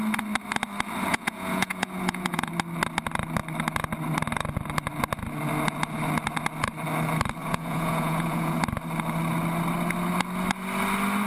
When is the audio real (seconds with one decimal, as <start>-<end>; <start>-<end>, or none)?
0.0-1.1; 2.5-7.4; 8.6-11.3